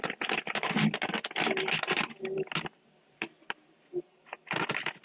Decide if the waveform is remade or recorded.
recorded